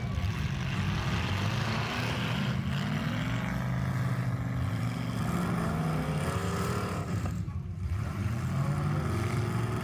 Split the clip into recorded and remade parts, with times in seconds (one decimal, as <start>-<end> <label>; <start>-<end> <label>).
0.0-6.4 recorded; 6.4-8.3 remade; 8.3-9.8 recorded